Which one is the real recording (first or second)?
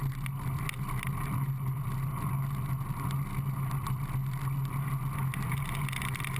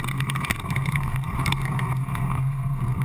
first